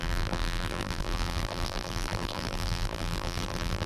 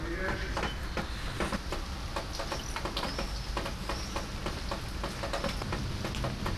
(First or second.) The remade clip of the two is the first